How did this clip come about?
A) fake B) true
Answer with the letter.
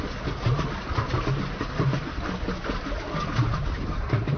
B